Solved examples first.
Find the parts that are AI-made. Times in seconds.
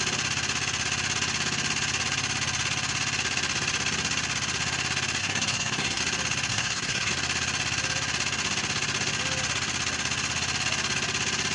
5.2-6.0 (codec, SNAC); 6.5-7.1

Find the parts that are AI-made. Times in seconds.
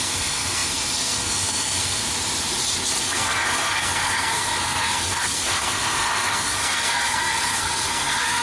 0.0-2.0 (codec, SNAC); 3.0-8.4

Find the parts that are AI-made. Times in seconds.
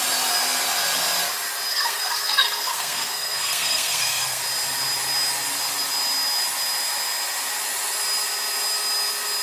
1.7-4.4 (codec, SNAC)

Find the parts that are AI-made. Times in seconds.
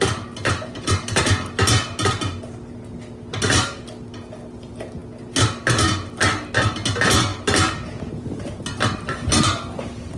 none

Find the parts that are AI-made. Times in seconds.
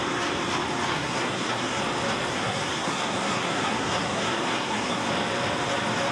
0.9-1.8 (codec, SNAC); 2.3-5.1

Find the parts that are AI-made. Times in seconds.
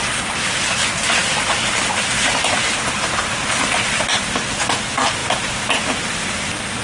none